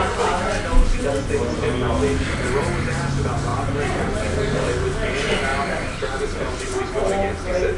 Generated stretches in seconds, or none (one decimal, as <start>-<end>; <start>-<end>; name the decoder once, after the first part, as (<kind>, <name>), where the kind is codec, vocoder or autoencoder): 3.5-4.1 (vocoder, BigVGAN v2); 5.5-6.8